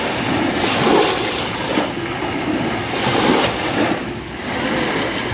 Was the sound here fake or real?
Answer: real